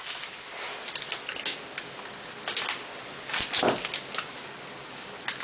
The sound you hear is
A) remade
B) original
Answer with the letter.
B